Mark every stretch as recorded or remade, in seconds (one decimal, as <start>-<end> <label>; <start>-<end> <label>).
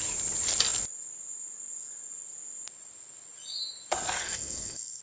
0.0-4.2 recorded; 4.2-5.0 remade